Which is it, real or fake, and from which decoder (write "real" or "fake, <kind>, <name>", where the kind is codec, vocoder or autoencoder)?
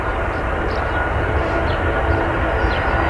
fake, vocoder, BigVGAN v2